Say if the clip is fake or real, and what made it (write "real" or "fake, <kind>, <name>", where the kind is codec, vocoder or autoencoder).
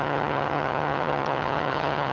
fake, vocoder, HiFi-GAN